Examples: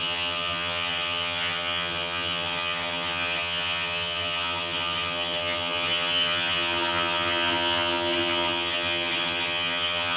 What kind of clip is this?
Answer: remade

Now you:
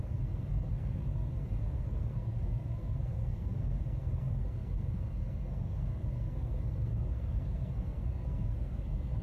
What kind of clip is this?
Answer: remade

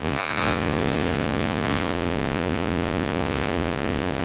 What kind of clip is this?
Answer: remade